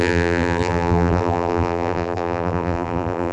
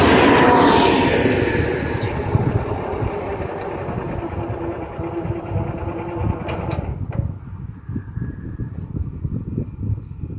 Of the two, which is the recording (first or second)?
second